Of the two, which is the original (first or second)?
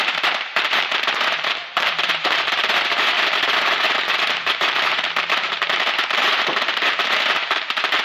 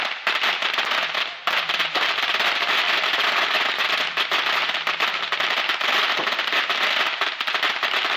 second